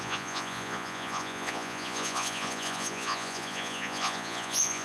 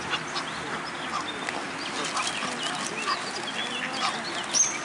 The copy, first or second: first